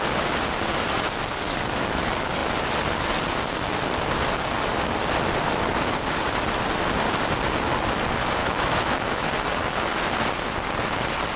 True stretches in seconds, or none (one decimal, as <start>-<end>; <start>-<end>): 0.0-8.4; 9.3-11.4